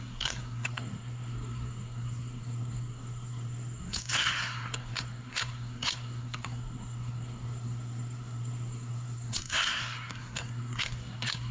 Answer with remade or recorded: remade